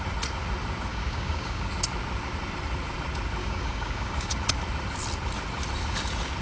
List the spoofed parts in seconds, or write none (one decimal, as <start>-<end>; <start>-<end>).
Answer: 0.9-1.7; 3.4-4.3